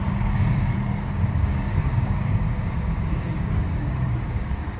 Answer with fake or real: fake